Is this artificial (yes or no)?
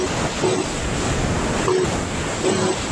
no